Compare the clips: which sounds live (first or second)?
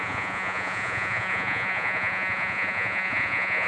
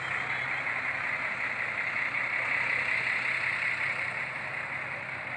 second